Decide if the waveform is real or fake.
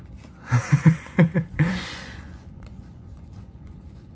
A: fake